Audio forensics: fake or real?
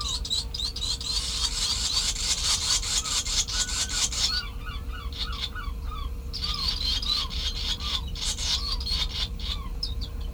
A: fake